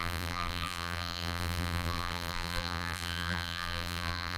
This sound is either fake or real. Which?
fake